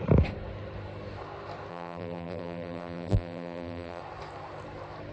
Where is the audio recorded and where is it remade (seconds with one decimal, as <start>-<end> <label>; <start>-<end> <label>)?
0.0-1.7 recorded; 1.7-4.0 remade; 4.0-5.1 recorded